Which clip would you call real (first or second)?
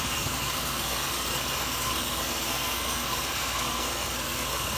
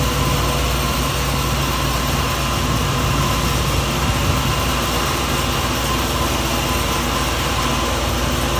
second